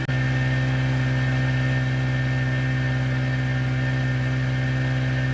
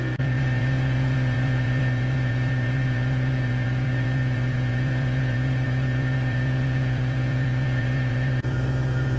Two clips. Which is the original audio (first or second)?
first